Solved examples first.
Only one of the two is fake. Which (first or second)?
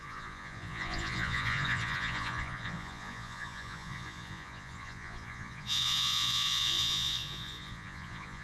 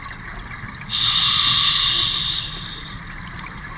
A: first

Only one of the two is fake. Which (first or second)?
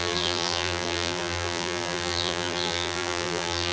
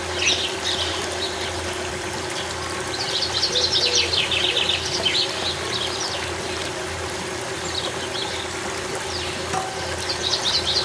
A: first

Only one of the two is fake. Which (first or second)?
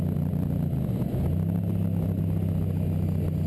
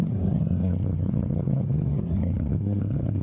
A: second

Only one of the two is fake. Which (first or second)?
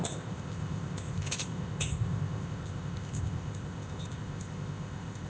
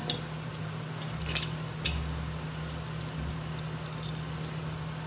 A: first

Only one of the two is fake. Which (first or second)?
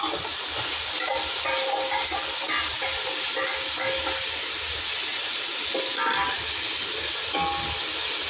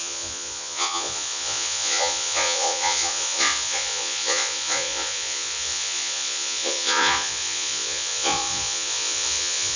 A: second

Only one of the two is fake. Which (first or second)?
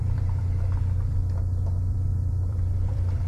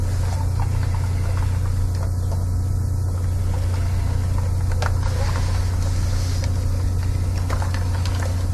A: first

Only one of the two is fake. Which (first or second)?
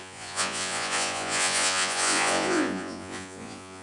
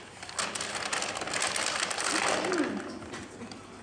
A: first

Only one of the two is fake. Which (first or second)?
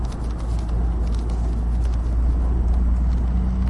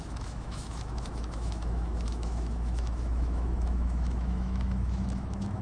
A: second